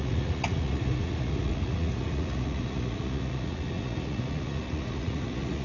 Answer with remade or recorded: remade